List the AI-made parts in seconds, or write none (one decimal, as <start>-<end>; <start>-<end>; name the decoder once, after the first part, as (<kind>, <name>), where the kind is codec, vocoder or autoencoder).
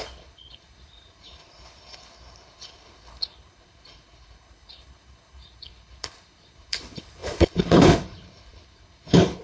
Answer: 0.0-9.4 (codec, HILCodec)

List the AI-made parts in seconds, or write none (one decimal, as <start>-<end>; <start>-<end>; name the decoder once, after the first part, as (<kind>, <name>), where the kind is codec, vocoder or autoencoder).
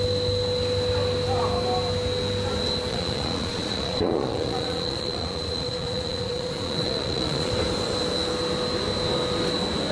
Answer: 2.9-7.5 (vocoder, Vocos)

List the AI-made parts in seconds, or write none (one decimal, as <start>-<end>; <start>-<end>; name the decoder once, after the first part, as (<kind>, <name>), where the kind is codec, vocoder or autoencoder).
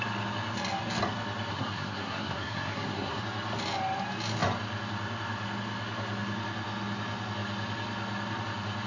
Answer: 1.5-3.2 (codec, SNAC)